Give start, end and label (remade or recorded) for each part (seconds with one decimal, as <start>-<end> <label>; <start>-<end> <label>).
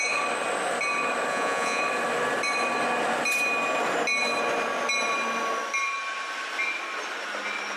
0.0-1.3 recorded; 1.3-1.8 remade; 1.8-7.8 recorded